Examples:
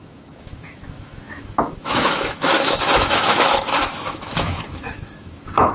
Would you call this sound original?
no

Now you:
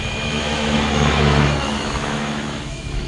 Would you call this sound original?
no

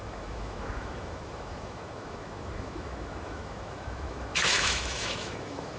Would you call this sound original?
no